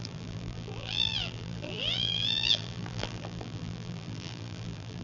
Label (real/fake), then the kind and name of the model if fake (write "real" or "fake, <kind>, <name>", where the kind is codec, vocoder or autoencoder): fake, vocoder, BigVGAN v2